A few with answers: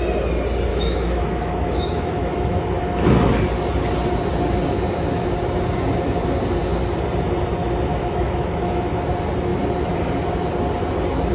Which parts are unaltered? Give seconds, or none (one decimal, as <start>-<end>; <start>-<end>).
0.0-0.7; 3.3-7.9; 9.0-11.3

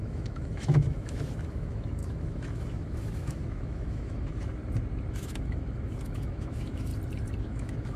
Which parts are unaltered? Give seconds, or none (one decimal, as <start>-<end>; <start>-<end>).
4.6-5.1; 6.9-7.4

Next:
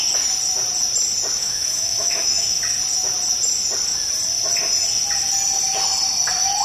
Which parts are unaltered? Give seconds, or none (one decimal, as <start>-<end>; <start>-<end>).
0.0-1.4; 2.6-6.6

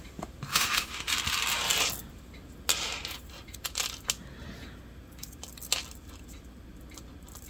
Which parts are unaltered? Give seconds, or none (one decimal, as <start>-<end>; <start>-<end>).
0.0-0.5; 1.1-7.5

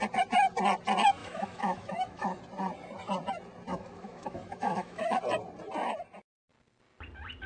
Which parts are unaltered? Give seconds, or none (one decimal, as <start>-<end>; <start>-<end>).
0.0-1.2; 2.4-3.7; 5.2-7.5